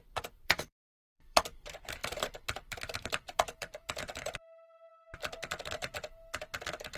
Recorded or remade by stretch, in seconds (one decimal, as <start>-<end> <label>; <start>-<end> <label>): 0.0-4.9 remade; 4.9-7.0 recorded